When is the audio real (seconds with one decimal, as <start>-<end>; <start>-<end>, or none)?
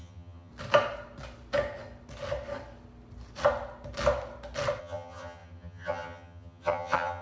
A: 0.5-4.8